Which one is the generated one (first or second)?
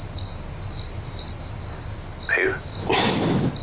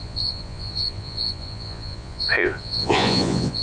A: second